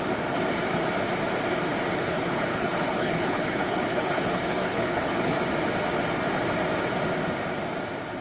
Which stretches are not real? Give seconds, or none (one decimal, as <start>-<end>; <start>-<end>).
1.9-5.4